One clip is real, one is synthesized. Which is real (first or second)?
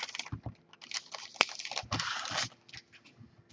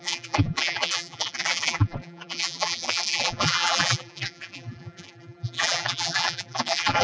first